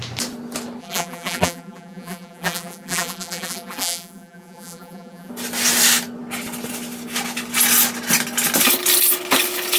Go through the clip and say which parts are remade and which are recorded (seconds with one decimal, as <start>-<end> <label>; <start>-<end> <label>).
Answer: 0.0-0.8 recorded; 0.8-5.3 remade; 5.3-9.8 recorded